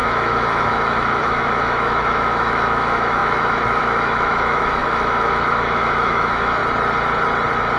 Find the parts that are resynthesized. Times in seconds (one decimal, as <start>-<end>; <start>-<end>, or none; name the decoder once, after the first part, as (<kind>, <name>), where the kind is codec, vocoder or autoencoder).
0.0-6.6 (autoencoder, DAC-VAE)